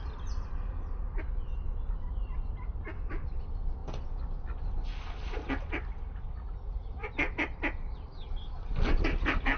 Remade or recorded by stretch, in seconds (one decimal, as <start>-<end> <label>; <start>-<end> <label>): 0.0-9.6 recorded